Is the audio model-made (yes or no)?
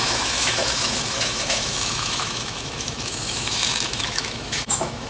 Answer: yes